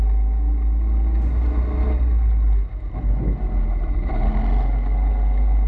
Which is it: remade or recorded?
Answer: recorded